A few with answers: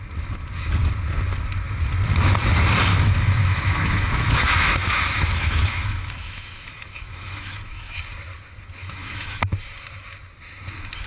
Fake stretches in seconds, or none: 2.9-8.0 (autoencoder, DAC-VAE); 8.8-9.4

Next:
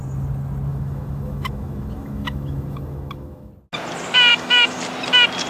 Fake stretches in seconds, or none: 0.7-3.5 (autoencoder, DAC-VAE); 4.3-4.8

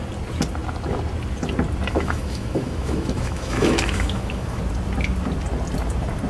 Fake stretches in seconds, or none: 1.9-4.6 (autoencoder, DAC-VAE)

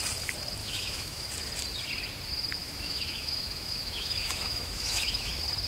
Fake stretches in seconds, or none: 0.6-1.3 (autoencoder, DAC-VAE); 2.6-5.3

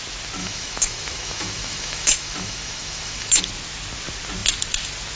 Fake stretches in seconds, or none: 0.4-3.5 (autoencoder, DAC-VAE)

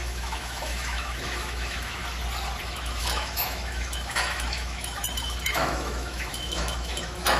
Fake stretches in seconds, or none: 0.0-2.0 (autoencoder, DAC-VAE); 2.6-7.4